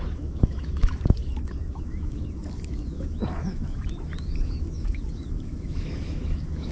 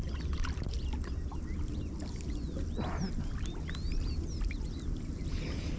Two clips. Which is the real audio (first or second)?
second